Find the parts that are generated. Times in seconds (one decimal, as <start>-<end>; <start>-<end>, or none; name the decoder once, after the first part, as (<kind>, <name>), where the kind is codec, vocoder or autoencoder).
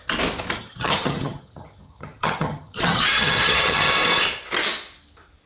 0.6-3.9 (vocoder, HiFi-GAN)